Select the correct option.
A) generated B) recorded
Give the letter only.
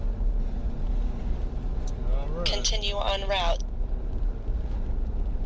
B